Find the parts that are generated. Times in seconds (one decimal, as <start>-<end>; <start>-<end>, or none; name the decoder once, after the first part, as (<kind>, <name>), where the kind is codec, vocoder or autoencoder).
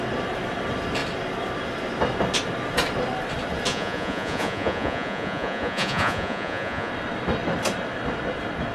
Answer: 3.7-6.9 (vocoder, Vocos)